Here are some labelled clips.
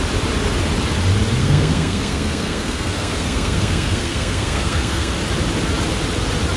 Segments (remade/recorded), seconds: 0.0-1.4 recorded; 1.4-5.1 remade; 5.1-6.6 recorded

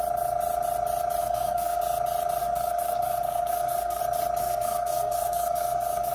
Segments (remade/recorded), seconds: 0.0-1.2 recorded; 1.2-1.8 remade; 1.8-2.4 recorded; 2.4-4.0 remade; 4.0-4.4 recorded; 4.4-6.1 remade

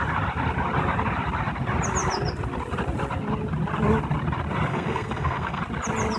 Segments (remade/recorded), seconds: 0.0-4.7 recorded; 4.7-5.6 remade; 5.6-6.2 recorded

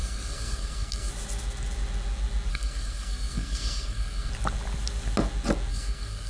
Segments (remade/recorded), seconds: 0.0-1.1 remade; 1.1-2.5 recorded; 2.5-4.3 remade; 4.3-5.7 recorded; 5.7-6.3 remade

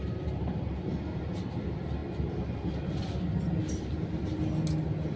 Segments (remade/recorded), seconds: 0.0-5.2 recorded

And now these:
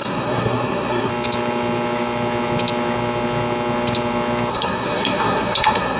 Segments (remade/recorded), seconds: 0.0-1.1 remade; 1.1-4.5 recorded; 4.5-6.0 remade

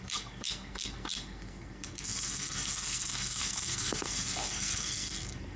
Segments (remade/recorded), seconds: 0.0-5.6 remade